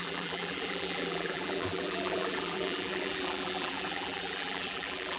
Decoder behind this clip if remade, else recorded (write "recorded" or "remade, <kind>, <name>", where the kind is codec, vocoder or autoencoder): remade, vocoder, BigVGAN v2